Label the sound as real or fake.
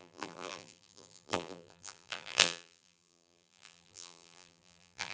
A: fake